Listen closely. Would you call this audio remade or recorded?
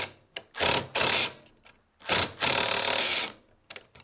recorded